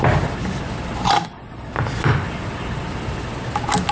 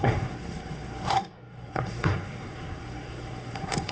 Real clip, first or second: first